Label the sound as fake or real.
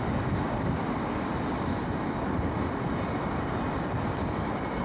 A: real